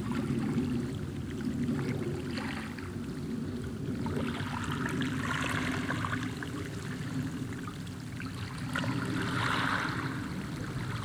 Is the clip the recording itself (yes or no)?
yes